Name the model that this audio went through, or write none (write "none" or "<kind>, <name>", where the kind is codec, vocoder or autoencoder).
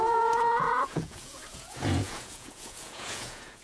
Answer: vocoder, Vocos